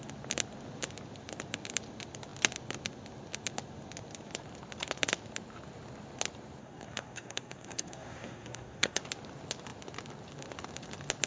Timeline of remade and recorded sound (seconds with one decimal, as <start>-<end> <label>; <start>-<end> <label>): 0.0-6.6 recorded; 6.6-9.0 remade; 9.0-11.3 recorded